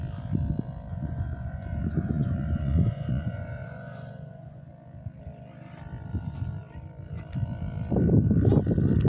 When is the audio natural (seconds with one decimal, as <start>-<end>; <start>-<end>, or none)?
0.0-0.9; 4.7-9.1